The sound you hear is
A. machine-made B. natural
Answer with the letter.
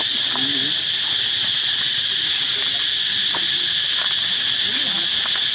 B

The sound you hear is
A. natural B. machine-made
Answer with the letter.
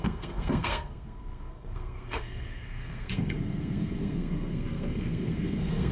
B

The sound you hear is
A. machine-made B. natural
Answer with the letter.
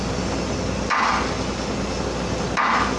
B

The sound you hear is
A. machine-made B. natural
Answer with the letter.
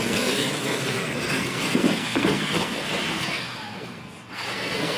A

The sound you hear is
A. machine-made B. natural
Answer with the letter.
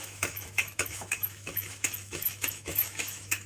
A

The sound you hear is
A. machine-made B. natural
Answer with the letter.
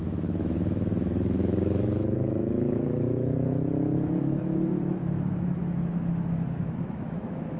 A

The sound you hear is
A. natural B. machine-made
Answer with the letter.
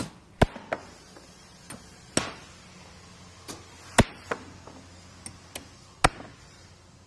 A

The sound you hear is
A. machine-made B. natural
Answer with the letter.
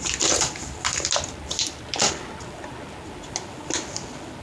B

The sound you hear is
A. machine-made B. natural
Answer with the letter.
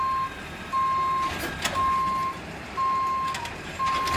B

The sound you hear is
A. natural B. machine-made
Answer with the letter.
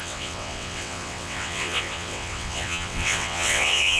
B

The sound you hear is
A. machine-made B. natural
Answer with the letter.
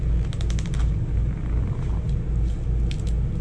B